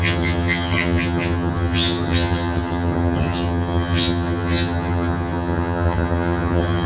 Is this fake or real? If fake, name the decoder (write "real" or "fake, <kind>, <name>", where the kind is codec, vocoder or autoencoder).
fake, vocoder, HiFi-GAN